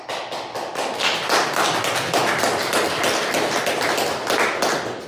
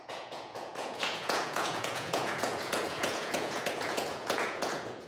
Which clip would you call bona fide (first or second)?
first